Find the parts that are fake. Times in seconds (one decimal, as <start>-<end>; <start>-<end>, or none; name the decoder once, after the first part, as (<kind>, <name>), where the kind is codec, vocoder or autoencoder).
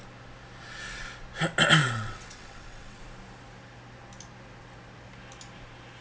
1.8-3.0 (vocoder, WaveNeXt)